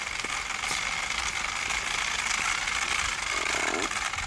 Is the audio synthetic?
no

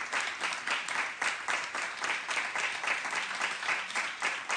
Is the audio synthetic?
no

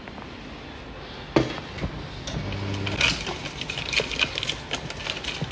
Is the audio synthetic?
no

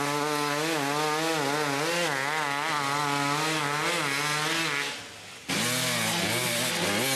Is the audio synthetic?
no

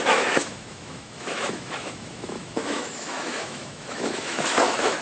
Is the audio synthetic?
yes